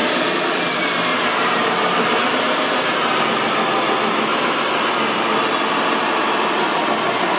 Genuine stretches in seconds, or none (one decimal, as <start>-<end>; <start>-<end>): 0.7-1.1; 3.2-4.3; 4.9-7.4